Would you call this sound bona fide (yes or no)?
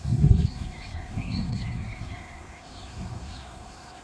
no